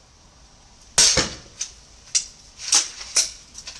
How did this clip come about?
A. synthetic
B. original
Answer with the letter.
B